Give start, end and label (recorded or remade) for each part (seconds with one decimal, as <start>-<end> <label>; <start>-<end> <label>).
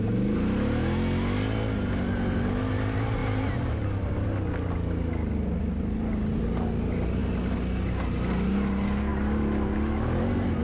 0.0-10.6 recorded